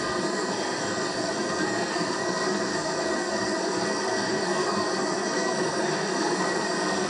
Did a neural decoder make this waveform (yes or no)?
yes